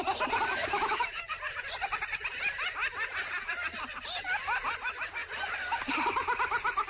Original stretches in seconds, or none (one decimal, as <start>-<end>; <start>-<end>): 0.0-0.5; 1.3-6.9